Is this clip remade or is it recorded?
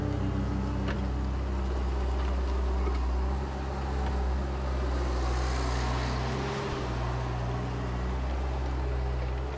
recorded